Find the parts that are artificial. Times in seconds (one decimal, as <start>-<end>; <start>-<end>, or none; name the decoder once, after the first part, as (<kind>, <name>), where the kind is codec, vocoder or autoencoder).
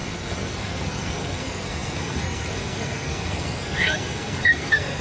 0.0-5.0 (codec, SNAC)